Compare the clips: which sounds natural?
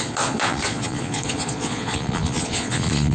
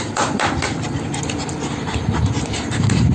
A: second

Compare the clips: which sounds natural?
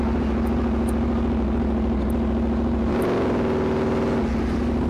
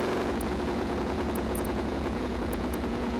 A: first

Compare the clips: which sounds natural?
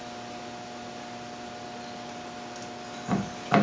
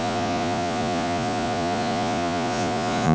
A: first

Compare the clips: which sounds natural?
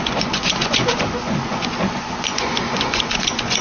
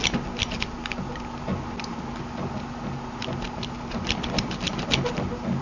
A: second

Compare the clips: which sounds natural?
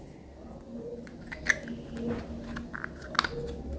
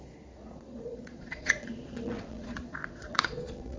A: first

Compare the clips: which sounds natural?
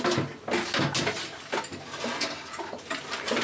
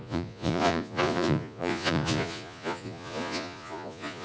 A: first